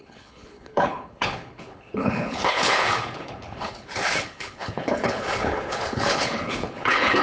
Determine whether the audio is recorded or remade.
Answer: remade